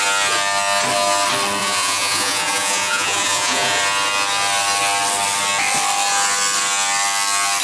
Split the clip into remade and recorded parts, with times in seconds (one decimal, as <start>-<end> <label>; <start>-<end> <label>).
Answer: 0.0-1.6 recorded; 1.6-3.8 remade; 3.8-7.6 recorded